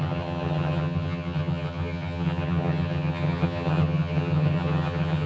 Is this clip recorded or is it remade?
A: remade